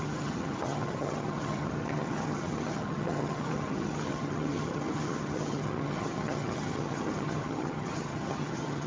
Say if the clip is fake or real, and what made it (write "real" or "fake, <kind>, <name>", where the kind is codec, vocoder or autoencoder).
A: fake, vocoder, HiFi-GAN